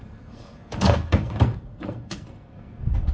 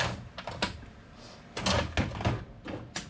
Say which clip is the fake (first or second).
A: first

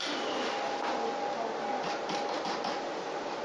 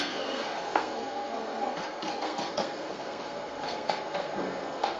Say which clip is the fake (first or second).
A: second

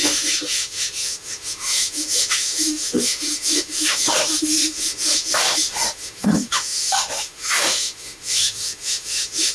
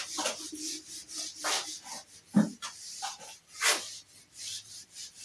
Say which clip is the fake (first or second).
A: first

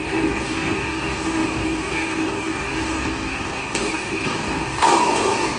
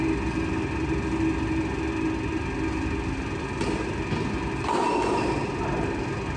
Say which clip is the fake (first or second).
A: first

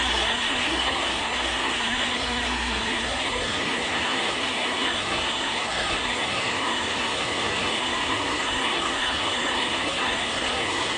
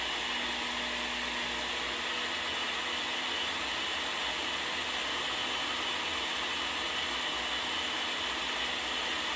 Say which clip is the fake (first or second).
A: first